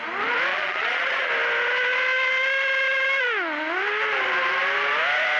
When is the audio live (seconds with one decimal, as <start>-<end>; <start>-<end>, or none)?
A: 0.0-0.5; 1.3-5.4